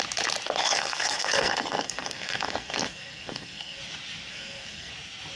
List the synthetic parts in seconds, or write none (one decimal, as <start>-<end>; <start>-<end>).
0.6-3.8; 4.3-4.9